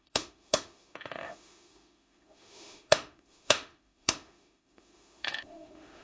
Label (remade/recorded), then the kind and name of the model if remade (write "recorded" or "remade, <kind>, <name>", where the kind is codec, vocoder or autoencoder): remade, autoencoder, DAC-VAE